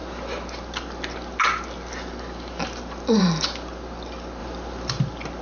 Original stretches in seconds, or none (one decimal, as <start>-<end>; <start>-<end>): 0.0-5.4